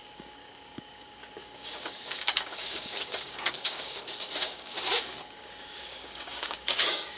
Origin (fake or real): fake